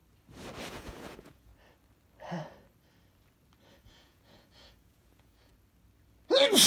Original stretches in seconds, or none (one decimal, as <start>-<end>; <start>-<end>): 0.0-0.7; 1.5-3.7; 5.5-6.7